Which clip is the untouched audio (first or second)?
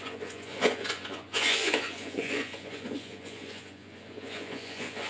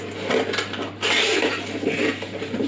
second